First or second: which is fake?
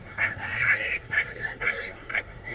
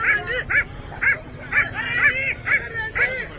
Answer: first